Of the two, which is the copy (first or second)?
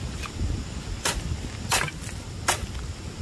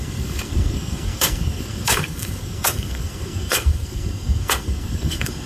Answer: second